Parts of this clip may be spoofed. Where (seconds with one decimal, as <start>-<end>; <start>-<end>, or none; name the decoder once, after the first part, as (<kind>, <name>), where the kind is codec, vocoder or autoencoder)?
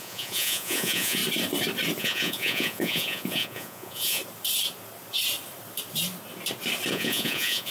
0.0-1.2 (vocoder, Vocos); 2.0-4.2; 6.9-7.7